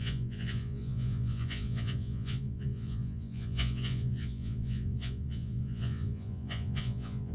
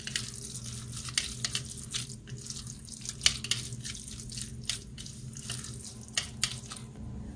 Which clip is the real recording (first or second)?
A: second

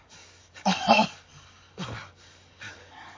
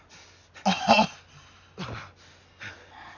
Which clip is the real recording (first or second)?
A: second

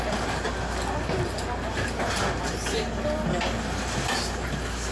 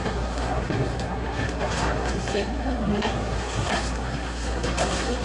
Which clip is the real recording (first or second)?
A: first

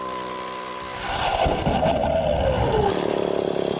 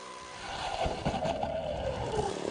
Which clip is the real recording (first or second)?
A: first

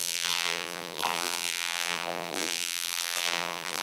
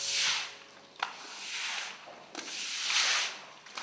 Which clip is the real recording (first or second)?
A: second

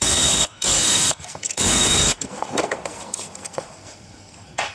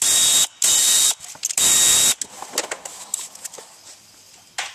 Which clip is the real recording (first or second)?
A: second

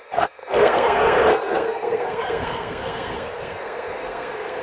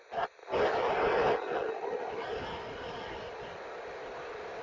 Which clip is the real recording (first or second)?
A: second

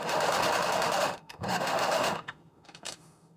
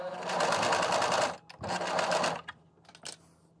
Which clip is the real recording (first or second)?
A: second